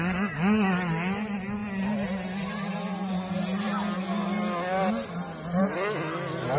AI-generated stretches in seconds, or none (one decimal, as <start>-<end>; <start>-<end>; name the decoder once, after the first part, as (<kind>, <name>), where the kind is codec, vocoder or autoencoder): none